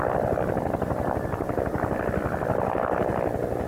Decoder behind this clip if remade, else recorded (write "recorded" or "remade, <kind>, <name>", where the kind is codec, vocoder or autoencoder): recorded